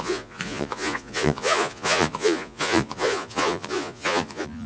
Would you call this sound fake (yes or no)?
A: yes